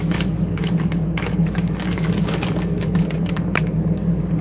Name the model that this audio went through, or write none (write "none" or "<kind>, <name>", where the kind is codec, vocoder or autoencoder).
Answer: codec, DAC